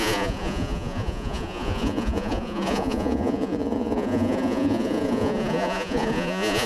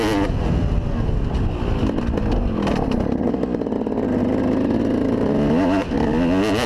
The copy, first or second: first